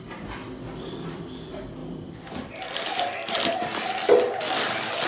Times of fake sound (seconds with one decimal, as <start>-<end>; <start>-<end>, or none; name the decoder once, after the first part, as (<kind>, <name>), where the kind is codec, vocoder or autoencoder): 0.4-1.2 (vocoder, BigVGAN v2); 1.8-3.6